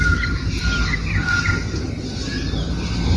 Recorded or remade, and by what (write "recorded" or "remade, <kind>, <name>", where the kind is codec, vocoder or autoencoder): recorded